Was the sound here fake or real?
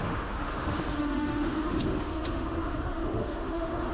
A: fake